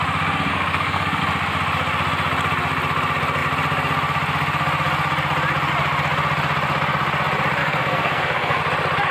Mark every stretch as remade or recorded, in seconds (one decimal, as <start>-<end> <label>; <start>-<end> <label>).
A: 0.0-0.5 recorded; 0.5-1.2 remade; 1.2-7.6 recorded; 7.6-8.6 remade; 8.6-9.1 recorded